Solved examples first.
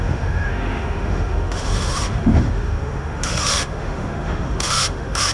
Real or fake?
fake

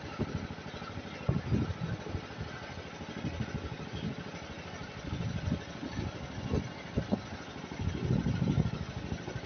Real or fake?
real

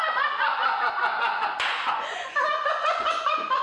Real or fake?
fake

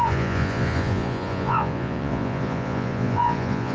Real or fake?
fake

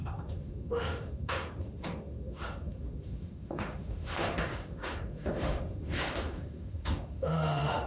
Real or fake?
fake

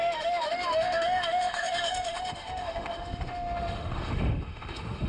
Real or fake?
fake